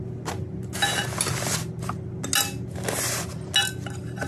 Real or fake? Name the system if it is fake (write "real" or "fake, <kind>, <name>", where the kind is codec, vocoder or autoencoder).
real